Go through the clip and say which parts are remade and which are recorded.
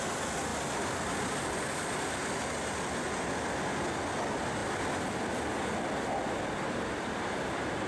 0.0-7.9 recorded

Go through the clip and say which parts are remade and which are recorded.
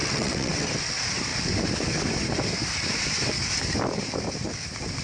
0.0-0.7 remade; 0.7-5.0 recorded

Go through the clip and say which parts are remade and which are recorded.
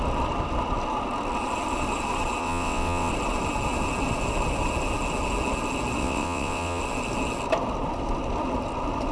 0.0-2.4 recorded; 2.4-3.1 remade; 3.1-6.0 recorded; 6.0-6.8 remade; 6.8-9.1 recorded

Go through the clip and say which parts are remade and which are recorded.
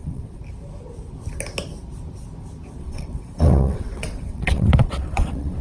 0.0-0.4 remade; 0.4-2.8 recorded; 2.8-5.6 remade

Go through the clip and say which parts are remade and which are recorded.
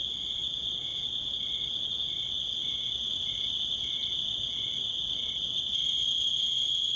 0.0-7.0 remade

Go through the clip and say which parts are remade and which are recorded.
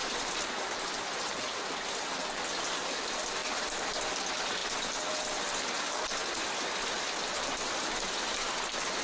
0.0-9.0 recorded